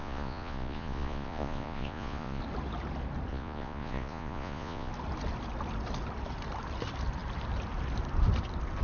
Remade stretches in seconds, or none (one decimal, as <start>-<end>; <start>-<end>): 0.0-2.4; 3.3-4.9

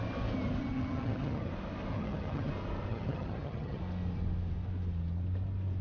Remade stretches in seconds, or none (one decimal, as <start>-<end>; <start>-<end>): 0.6-1.5; 1.9-2.5; 2.9-3.8

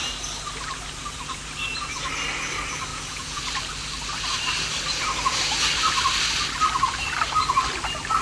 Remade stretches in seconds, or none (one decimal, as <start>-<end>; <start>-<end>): 2.9-3.4

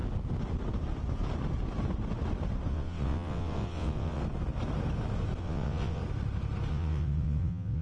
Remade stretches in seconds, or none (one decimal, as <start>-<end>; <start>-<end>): 2.7-4.2; 5.4-6.0; 6.7-7.8

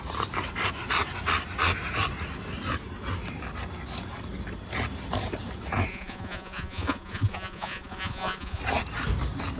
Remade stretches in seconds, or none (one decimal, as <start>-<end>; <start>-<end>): 5.9-8.6

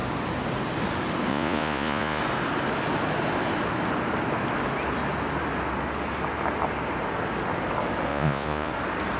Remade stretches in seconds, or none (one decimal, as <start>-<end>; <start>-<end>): 1.3-2.2; 8.1-8.7

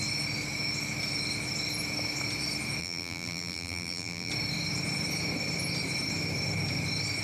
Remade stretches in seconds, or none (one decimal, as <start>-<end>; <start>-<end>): 2.8-4.3